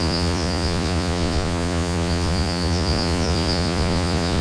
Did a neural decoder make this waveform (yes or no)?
yes